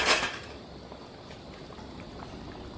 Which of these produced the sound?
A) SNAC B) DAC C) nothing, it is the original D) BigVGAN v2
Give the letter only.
C